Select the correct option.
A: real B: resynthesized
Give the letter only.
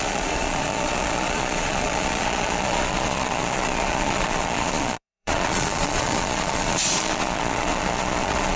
B